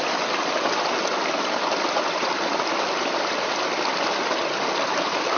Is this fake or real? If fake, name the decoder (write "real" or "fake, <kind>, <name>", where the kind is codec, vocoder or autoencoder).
real